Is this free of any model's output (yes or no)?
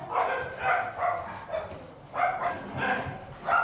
yes